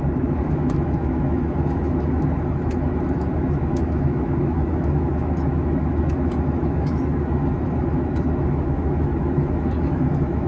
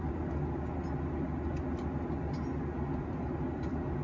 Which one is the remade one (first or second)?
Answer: first